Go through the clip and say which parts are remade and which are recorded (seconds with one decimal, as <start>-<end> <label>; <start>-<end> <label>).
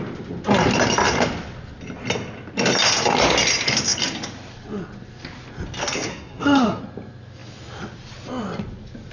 0.0-6.1 recorded; 6.1-6.8 remade; 6.8-9.1 recorded